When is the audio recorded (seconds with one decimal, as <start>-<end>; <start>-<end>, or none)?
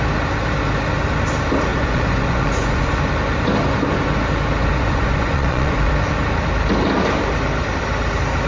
0.0-1.7; 2.9-4.6; 5.9-8.5